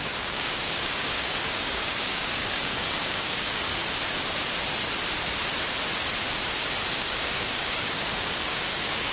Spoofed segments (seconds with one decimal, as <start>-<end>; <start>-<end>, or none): 0.0-3.7; 7.0-9.1